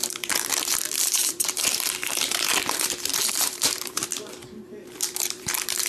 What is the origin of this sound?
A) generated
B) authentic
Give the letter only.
A